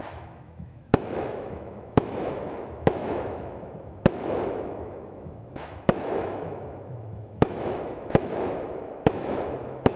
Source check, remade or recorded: remade